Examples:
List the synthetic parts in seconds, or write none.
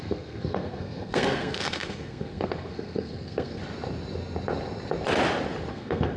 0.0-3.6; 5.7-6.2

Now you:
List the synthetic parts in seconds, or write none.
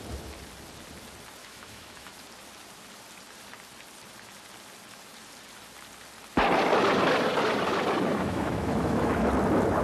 1.4-2.1; 8.1-9.3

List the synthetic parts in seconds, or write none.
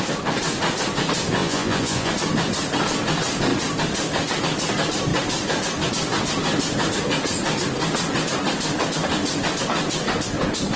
1.4-2.1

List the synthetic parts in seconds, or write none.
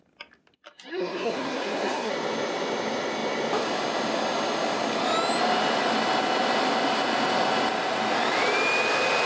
0.9-2.1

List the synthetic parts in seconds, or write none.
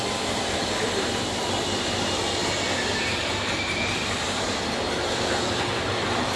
2.4-6.4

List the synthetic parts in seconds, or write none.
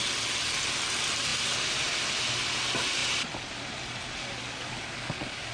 4.2-5.5